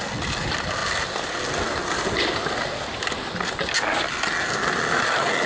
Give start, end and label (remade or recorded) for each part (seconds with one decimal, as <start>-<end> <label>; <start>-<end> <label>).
0.0-5.5 recorded